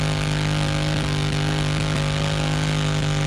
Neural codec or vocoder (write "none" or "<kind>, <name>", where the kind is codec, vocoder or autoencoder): none